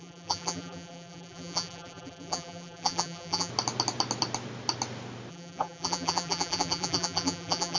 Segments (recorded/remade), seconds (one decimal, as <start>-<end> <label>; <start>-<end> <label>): 0.0-3.5 remade; 3.5-5.3 recorded; 5.3-7.8 remade